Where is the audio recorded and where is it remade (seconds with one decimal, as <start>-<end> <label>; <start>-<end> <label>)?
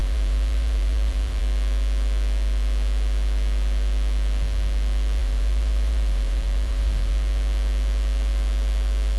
0.0-1.4 remade; 1.4-5.2 recorded; 5.2-7.1 remade; 7.1-9.2 recorded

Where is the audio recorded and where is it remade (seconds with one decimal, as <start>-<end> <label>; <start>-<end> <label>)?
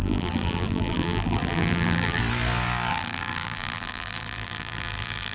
0.0-2.2 remade; 2.2-2.9 recorded; 2.9-5.3 remade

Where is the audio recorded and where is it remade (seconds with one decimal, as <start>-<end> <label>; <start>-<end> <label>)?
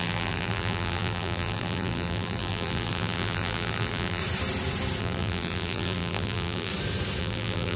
0.0-4.2 remade; 4.2-5.0 recorded; 5.0-6.7 remade; 6.7-7.2 recorded; 7.2-7.8 remade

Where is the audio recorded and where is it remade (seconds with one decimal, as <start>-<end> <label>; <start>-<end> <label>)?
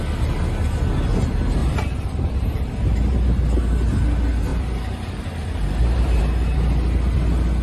0.0-1.6 recorded; 1.6-3.4 remade; 3.4-4.5 recorded; 4.5-6.2 remade; 6.2-7.6 recorded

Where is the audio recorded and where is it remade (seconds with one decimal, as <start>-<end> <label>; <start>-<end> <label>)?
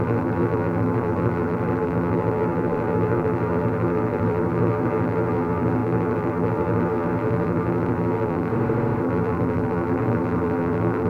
0.0-8.5 remade; 8.5-9.0 recorded; 9.0-11.1 remade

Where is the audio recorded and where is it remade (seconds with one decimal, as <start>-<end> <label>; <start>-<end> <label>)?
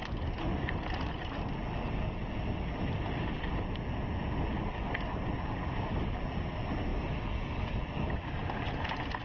0.0-9.2 recorded